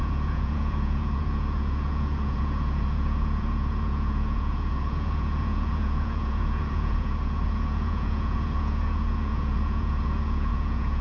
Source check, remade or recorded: remade